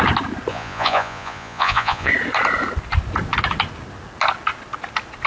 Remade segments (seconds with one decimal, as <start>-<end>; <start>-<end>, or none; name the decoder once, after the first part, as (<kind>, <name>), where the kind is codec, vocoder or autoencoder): 0.5-2.1 (vocoder, Vocos)